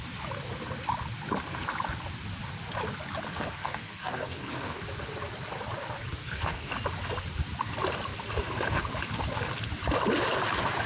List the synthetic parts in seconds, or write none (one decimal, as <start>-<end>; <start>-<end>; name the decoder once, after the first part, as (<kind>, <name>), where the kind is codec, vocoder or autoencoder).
3.3-4.8 (codec, SNAC); 6.2-6.7

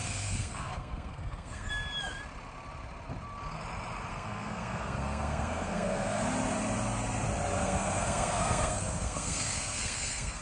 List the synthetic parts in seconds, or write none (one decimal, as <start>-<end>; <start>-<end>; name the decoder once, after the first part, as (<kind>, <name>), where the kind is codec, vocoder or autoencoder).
0.0-1.7 (codec, SNAC); 4.1-6.2; 7.6-10.4